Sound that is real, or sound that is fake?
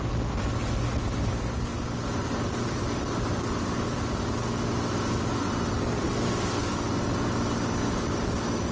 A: real